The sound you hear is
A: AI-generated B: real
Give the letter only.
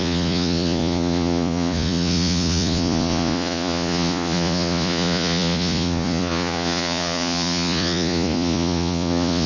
A